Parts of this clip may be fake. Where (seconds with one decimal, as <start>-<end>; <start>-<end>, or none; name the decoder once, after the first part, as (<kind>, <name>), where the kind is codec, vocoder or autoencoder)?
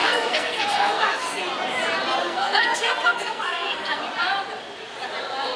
0.0-1.4 (codec, SNAC); 2.2-4.0